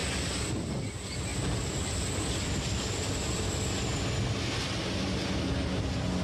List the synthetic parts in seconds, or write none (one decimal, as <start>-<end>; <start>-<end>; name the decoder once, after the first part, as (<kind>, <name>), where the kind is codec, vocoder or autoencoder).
1.3-3.4 (vocoder, BigVGAN v2)